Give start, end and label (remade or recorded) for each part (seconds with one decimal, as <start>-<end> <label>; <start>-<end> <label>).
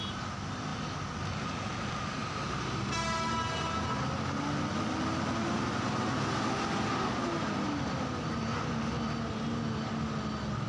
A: 0.0-10.7 recorded